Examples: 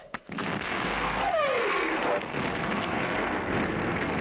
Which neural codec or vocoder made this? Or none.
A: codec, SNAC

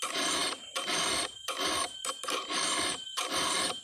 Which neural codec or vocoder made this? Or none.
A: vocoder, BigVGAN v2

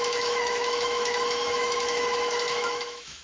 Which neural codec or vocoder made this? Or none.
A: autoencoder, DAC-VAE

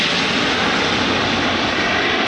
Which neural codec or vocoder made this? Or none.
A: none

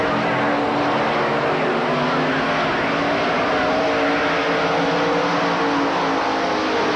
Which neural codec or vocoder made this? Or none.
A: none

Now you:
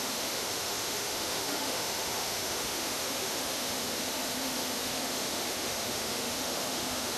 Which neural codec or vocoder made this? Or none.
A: autoencoder, DAC-VAE